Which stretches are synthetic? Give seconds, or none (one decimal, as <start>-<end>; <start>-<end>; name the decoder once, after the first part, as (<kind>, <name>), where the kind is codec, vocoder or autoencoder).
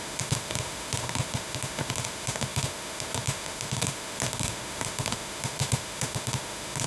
0.0-6.9 (autoencoder, DAC-VAE)